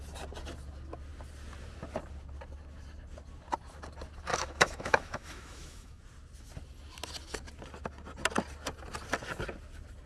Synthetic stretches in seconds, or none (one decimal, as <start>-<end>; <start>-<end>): 4.3-6.0